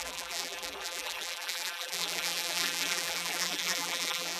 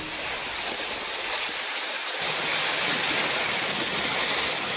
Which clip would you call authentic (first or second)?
second